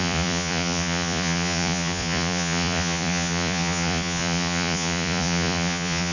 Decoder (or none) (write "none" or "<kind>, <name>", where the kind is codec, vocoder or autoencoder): vocoder, Vocos